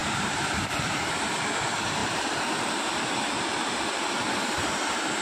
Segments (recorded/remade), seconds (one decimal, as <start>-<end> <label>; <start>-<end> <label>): 0.0-1.3 remade; 1.3-2.0 recorded; 2.0-5.2 remade